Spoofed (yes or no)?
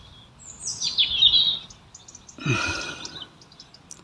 no